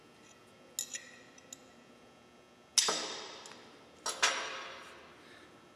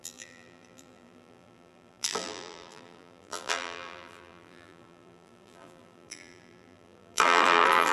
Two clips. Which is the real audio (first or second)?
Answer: first